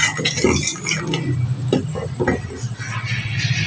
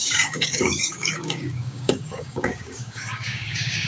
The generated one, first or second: second